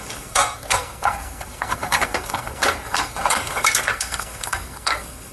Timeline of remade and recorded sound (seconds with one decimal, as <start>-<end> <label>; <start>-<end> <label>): 0.0-5.3 remade